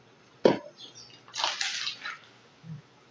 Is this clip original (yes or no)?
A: yes